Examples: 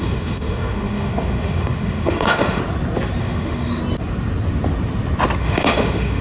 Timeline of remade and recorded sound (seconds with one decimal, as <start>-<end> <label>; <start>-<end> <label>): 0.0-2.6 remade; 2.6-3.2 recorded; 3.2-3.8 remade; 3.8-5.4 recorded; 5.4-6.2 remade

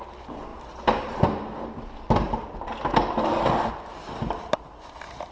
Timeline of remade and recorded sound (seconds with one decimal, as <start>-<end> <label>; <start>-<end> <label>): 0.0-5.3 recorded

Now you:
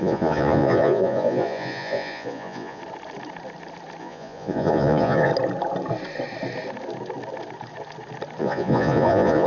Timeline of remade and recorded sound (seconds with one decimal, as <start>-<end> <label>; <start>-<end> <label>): 0.0-2.8 remade; 2.8-4.0 recorded; 4.0-5.3 remade; 5.3-8.4 recorded; 8.4-9.5 remade

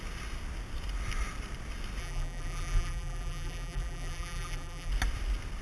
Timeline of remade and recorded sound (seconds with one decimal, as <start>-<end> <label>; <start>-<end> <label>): 0.0-2.0 recorded; 2.0-4.9 remade; 4.9-5.6 recorded

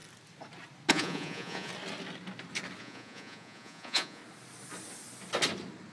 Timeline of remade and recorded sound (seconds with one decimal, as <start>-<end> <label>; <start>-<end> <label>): 0.0-0.9 recorded; 0.9-1.7 remade; 1.7-2.8 recorded; 2.8-4.2 remade; 4.2-5.9 recorded